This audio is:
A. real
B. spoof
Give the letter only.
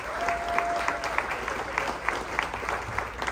A